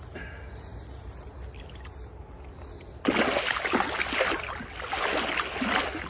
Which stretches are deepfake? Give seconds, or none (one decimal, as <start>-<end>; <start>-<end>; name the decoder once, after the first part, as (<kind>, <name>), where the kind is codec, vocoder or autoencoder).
none